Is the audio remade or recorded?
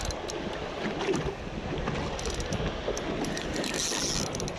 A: recorded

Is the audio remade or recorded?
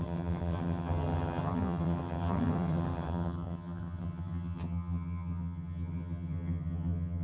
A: remade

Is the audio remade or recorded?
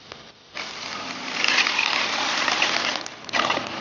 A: remade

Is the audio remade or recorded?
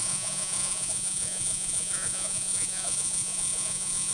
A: remade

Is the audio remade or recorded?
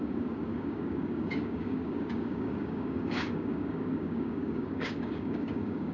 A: remade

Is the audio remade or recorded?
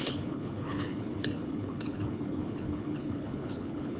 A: remade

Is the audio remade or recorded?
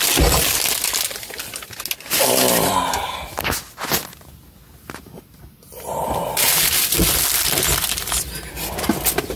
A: recorded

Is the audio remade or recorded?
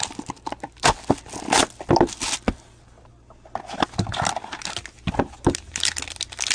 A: recorded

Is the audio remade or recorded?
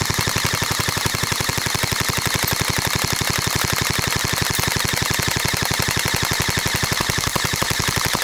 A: recorded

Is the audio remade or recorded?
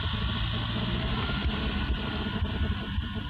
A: recorded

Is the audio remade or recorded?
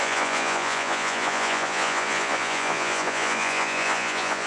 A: remade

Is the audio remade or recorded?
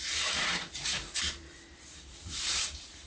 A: remade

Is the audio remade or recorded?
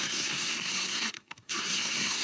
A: remade